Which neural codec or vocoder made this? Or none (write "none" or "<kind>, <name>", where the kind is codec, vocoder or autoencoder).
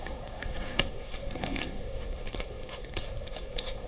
codec, SNAC